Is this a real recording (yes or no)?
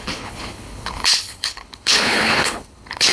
no